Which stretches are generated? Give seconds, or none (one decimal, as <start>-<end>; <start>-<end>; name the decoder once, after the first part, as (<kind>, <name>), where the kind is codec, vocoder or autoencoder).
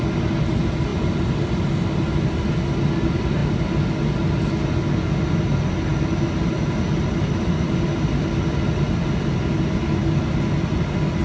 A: none